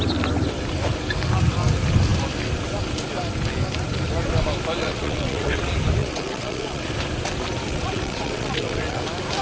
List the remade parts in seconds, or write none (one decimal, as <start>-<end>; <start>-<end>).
4.8-5.6; 6.0-6.8; 7.7-9.0